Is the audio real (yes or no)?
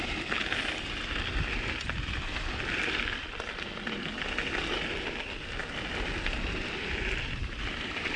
yes